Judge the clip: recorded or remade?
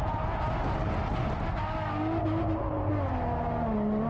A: recorded